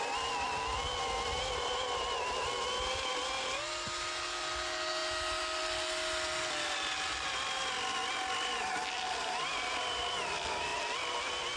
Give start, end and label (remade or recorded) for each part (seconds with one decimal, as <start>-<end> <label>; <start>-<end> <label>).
0.0-11.6 recorded